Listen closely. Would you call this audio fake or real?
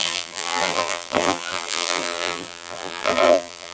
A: fake